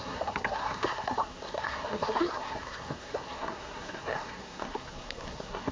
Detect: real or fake fake